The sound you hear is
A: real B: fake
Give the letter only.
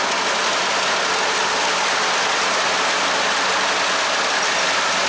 A